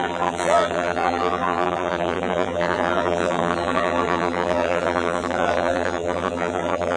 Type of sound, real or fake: fake